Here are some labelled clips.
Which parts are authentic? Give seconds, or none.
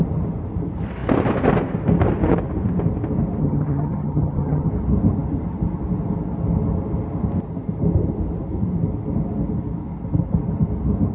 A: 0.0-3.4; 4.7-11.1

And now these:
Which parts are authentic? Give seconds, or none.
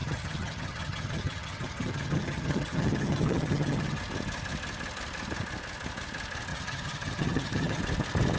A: 4.0-6.5; 7.8-8.4